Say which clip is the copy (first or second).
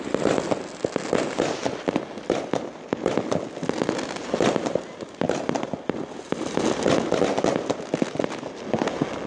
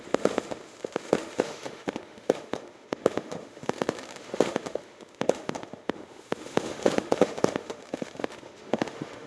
second